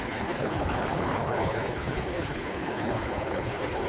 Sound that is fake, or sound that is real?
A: fake